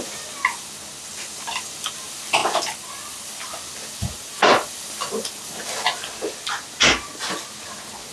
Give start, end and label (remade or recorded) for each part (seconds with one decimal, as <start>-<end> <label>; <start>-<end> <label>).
0.0-8.1 recorded